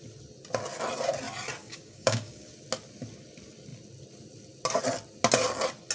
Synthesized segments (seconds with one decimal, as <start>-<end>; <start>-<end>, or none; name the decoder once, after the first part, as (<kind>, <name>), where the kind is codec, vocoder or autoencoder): 1.6-2.5 (codec, DAC)